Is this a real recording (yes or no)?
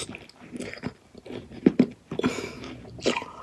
yes